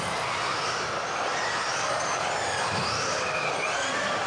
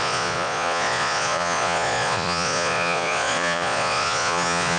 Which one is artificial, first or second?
second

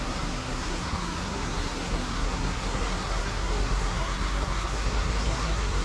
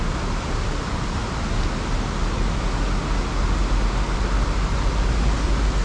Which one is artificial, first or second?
first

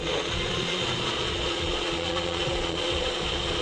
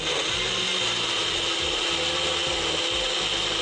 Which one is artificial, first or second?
first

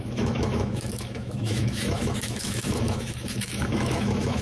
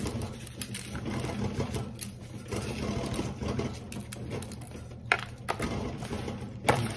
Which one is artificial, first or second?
first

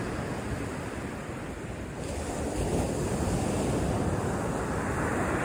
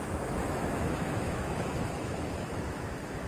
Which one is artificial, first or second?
second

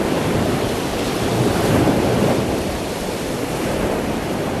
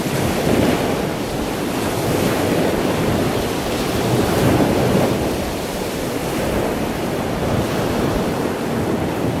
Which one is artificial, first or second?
first